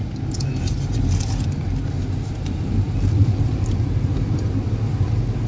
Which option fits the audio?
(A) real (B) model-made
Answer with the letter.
A